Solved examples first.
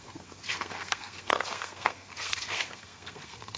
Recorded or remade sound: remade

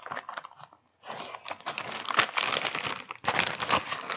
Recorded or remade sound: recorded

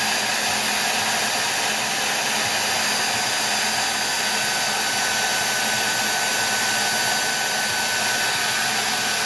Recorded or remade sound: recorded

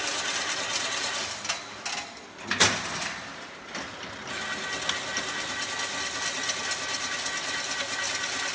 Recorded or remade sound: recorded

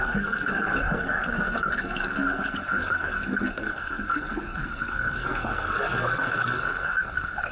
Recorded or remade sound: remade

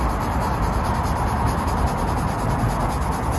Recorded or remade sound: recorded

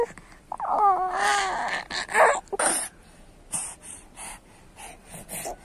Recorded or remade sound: recorded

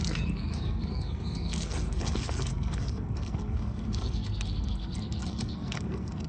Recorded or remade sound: remade